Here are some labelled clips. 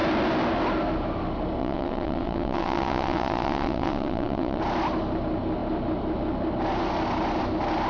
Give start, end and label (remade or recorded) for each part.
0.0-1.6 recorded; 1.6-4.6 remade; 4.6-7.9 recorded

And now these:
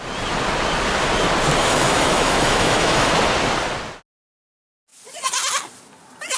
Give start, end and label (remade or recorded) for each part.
0.0-1.6 recorded; 1.6-3.1 remade; 3.1-6.4 recorded

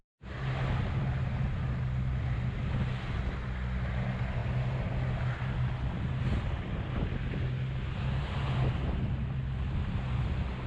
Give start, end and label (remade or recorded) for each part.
0.0-10.7 recorded

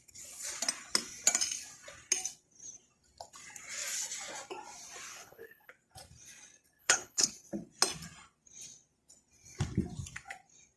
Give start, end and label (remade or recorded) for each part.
0.0-5.1 recorded; 5.1-5.7 remade; 5.7-6.8 recorded; 6.8-7.3 remade; 7.3-10.8 recorded

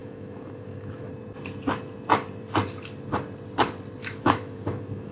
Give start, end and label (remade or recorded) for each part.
0.0-1.1 remade; 1.1-4.0 recorded; 4.0-5.1 remade

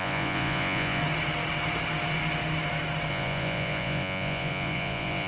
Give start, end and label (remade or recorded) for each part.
0.0-1.0 remade; 1.0-3.1 recorded; 3.1-5.3 remade

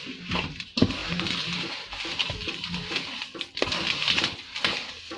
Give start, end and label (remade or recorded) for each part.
0.0-5.2 recorded

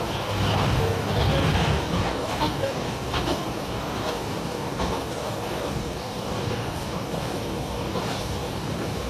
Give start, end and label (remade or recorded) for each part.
0.0-9.1 remade